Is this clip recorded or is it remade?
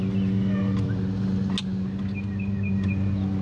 recorded